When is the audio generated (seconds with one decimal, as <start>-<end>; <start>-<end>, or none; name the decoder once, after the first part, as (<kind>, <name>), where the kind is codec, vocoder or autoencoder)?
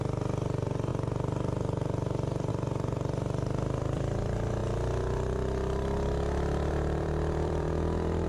0.0-4.6 (vocoder, BigVGAN v2); 6.7-8.3